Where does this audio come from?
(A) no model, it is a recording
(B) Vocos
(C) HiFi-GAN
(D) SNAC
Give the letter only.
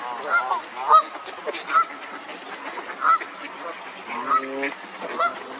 A